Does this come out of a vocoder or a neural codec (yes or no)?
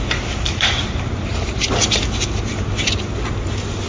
no